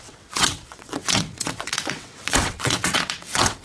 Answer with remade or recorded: remade